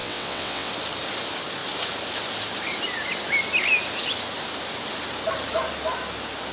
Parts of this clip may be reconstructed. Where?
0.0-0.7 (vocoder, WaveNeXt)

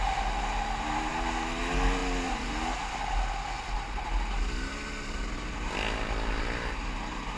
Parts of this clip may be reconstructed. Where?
none

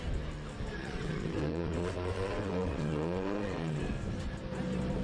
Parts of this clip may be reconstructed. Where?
0.8-3.8 (vocoder, WaveNeXt)